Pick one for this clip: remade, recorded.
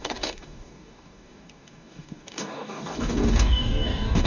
remade